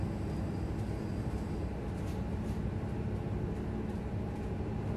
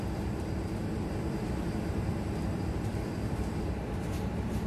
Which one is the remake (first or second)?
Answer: second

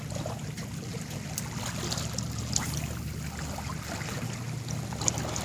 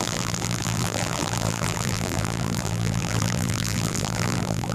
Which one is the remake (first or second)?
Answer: second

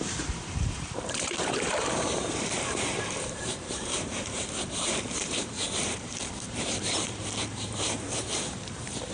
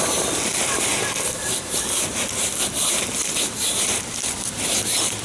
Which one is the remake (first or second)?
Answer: first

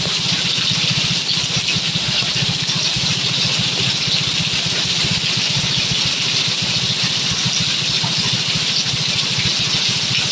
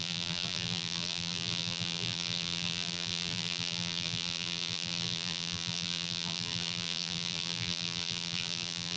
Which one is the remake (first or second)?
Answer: second